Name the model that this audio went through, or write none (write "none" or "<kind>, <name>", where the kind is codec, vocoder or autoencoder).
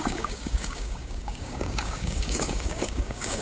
codec, DAC